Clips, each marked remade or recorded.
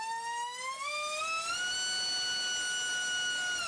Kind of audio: recorded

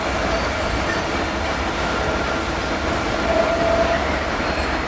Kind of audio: recorded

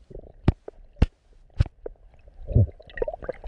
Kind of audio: recorded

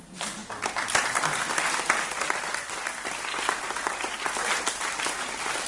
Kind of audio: recorded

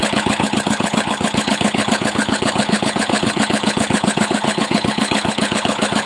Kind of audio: remade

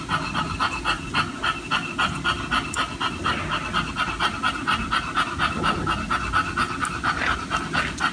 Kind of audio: recorded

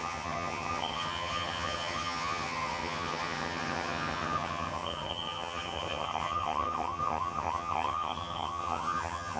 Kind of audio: remade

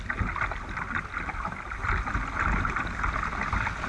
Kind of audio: recorded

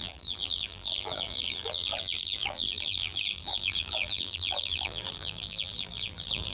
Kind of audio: remade